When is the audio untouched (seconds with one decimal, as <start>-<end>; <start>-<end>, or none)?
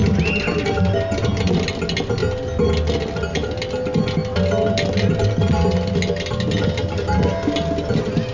0.0-8.3